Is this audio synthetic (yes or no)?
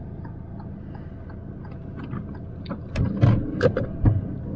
no